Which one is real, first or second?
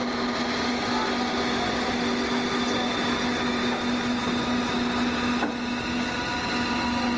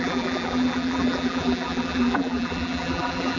first